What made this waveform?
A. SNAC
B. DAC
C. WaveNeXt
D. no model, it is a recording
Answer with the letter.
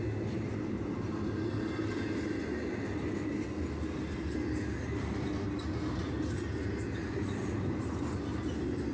D